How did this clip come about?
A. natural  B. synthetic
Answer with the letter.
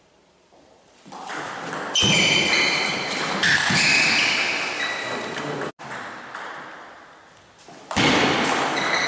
A